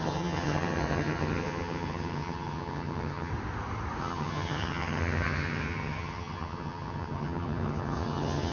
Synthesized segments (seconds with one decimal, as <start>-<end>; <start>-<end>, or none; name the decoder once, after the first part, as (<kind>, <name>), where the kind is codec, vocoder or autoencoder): 0.0-3.3 (vocoder, HiFi-GAN); 4.0-8.5